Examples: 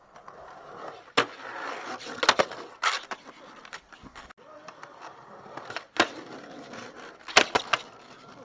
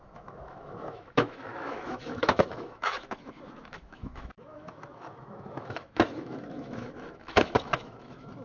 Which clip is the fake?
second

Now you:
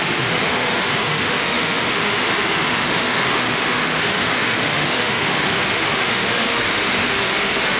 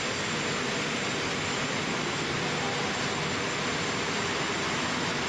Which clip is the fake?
first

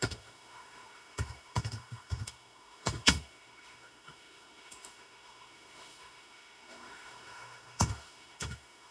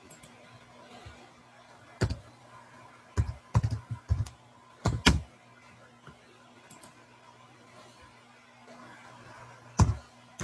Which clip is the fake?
first